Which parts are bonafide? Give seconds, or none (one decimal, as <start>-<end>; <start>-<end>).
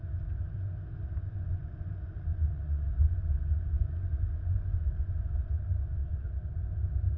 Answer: 0.0-1.1; 5.4-7.2